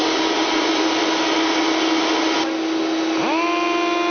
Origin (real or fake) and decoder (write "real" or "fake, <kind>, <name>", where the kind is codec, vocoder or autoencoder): real